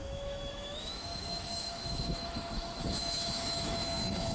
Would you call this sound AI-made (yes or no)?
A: yes